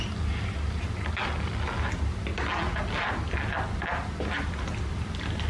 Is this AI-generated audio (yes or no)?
no